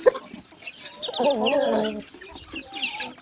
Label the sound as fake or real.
real